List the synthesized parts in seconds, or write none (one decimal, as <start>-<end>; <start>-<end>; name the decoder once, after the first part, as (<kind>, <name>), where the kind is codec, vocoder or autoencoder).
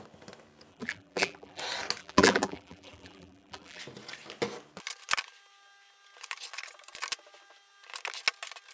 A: 0.7-1.6 (vocoder, BigVGAN v2); 2.0-3.8